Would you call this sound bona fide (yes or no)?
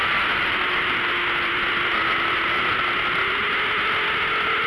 yes